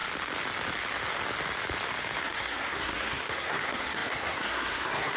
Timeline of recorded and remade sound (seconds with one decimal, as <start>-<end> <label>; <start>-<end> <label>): 0.0-2.2 recorded; 2.2-5.2 remade